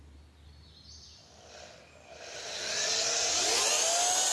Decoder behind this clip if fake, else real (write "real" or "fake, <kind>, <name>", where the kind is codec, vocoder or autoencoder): real